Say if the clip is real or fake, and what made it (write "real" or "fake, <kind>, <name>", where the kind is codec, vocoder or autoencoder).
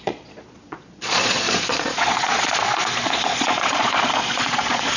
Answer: fake, vocoder, Vocos